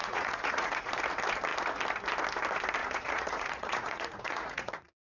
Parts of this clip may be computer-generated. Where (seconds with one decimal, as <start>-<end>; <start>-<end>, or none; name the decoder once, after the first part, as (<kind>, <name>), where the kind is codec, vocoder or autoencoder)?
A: 0.0-0.9 (vocoder, Vocos); 2.8-5.1